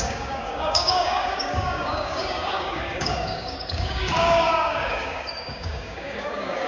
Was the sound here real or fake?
fake